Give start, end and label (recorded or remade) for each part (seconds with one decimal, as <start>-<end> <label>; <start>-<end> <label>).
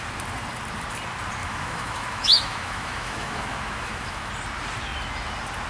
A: 0.0-1.4 recorded; 1.4-4.3 remade; 4.3-5.7 recorded